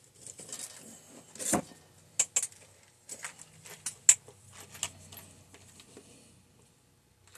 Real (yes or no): yes